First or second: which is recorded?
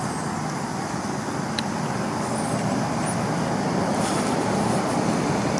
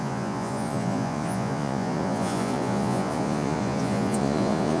first